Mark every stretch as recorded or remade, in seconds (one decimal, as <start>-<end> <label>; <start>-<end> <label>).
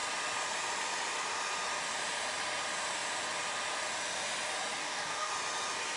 0.0-4.8 recorded; 4.8-5.3 remade; 5.3-6.0 recorded